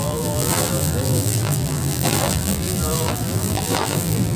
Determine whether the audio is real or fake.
fake